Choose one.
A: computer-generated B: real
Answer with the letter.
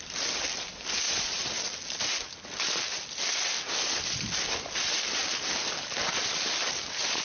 B